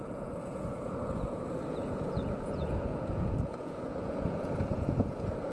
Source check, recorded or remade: remade